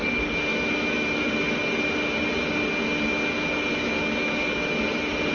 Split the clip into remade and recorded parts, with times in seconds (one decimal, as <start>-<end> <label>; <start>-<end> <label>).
0.0-0.5 recorded; 0.5-1.4 remade; 1.4-3.7 recorded; 3.7-4.8 remade; 4.8-5.3 recorded